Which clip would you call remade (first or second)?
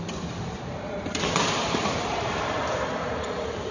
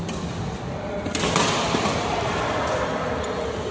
first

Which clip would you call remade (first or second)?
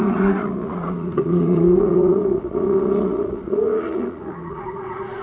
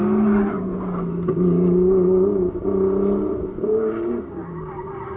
first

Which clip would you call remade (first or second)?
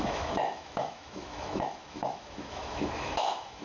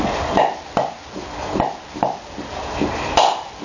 first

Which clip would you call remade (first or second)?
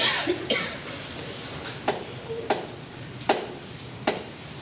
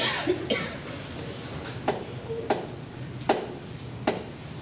first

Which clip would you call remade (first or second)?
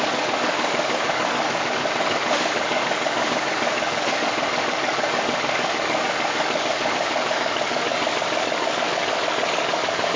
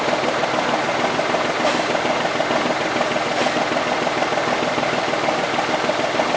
first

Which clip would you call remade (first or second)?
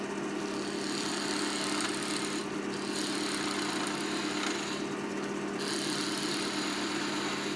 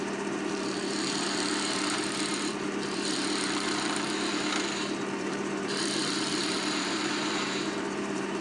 second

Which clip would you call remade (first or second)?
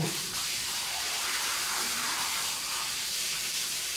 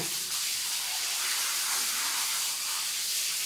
first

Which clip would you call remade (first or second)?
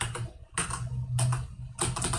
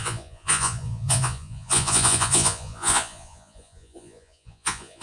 second